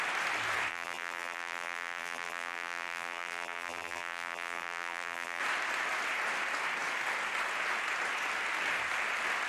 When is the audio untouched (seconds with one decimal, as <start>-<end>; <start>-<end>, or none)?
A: 0.0-0.7; 5.4-9.5